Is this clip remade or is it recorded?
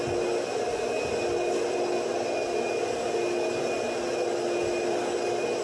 recorded